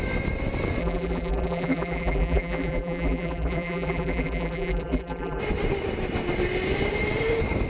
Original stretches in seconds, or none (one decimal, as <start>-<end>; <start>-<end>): 0.0-0.8; 5.4-7.7